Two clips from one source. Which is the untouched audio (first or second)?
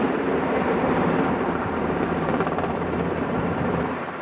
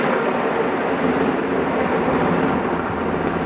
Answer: second